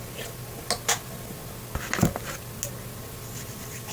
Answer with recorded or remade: recorded